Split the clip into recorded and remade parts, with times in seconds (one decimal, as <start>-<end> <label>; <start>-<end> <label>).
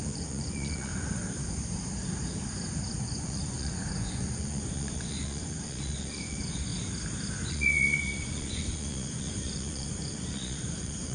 0.0-0.9 remade; 0.9-3.0 recorded; 3.0-6.7 remade; 6.7-7.5 recorded; 7.5-11.1 remade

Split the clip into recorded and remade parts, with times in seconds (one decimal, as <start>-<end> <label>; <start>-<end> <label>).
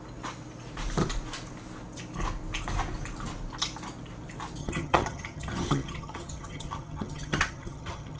0.0-4.6 recorded; 4.6-8.2 remade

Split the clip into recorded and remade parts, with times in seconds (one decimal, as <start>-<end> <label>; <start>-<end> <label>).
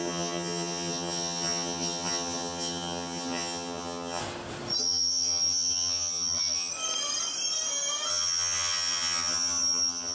0.0-4.2 remade; 4.2-4.8 recorded; 4.8-6.7 remade; 6.7-8.1 recorded; 8.1-10.1 remade